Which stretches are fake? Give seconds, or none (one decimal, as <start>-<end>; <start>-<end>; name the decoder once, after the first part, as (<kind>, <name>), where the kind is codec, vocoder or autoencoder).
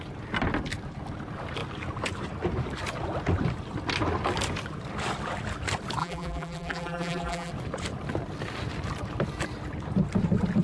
6.0-7.5 (vocoder, BigVGAN v2)